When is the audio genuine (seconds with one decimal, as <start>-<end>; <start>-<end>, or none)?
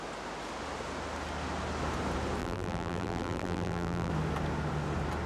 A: 0.0-2.4; 4.1-5.3